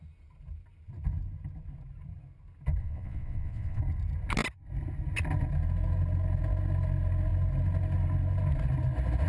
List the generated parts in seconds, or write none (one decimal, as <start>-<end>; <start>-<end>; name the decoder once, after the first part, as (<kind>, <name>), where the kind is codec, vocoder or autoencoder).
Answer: 2.8-3.8 (vocoder, WaveNeXt)